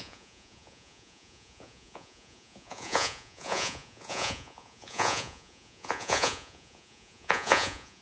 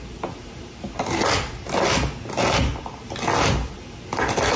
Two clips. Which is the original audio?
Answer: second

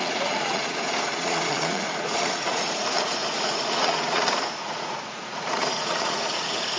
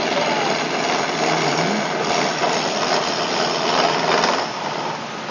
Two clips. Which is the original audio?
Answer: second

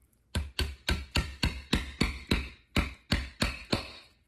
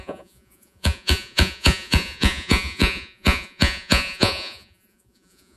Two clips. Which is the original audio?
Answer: first